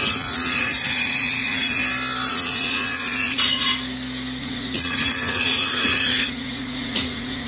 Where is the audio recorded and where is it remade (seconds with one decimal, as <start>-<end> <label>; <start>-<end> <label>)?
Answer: 0.0-1.8 remade; 1.8-2.3 recorded; 2.3-3.7 remade; 3.7-4.4 recorded; 4.4-7.5 remade